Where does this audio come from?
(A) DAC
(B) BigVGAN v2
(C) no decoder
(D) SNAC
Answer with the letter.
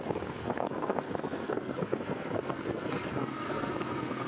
D